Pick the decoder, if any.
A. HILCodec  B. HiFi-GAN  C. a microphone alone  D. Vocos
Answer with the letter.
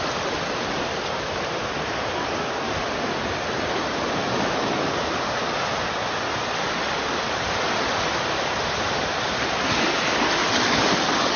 C